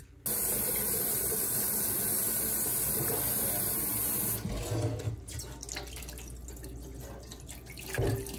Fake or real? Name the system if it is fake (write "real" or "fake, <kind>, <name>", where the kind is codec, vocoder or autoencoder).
real